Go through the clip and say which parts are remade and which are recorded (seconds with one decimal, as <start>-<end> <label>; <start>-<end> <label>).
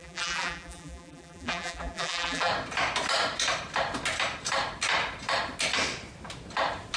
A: 0.0-2.5 remade; 2.5-7.0 recorded